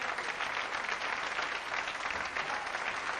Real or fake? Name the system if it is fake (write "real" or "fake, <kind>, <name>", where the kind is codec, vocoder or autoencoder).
real